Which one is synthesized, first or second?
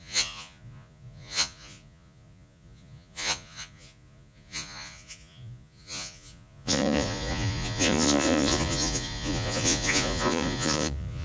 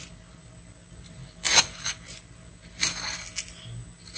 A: first